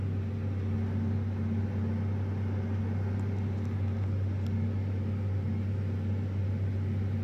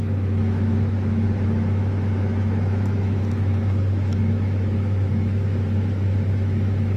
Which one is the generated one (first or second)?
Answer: second